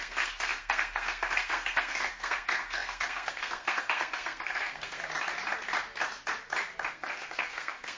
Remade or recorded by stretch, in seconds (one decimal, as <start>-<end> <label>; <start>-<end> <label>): 0.0-5.0 remade; 5.0-6.9 recorded; 6.9-8.0 remade